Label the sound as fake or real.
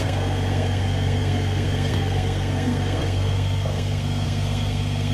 fake